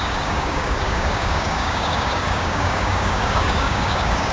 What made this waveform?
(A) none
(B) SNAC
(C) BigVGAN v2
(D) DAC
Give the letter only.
D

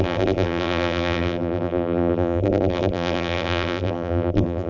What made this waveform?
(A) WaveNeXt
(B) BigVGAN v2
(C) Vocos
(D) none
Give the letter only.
B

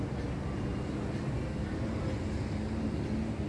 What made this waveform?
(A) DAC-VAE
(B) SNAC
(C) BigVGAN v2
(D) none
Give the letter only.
D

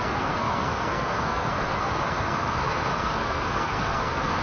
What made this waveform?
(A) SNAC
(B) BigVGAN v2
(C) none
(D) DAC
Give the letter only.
A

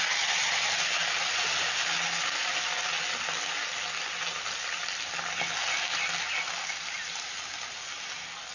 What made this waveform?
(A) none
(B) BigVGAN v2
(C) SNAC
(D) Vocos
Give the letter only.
A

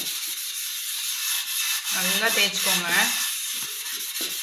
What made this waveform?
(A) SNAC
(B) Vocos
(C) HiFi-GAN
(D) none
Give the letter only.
D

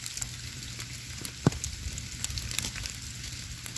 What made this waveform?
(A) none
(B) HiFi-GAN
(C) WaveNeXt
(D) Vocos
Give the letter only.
A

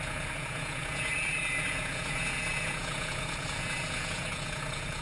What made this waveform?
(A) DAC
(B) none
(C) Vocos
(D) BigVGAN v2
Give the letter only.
C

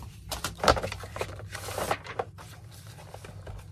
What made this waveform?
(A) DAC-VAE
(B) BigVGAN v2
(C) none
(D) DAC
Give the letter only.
B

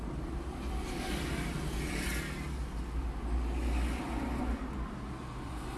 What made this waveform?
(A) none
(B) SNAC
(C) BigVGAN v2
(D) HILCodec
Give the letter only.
A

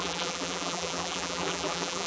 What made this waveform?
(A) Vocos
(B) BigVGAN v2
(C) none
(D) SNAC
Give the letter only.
B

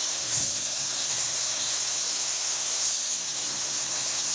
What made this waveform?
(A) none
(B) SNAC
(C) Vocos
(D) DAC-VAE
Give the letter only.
B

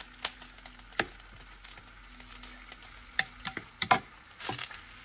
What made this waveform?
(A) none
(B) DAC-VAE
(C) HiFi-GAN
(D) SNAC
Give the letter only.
A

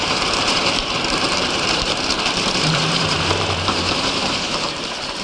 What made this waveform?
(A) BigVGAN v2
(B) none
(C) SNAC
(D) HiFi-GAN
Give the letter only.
A